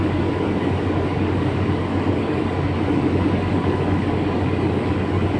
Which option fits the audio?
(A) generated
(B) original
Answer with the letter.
A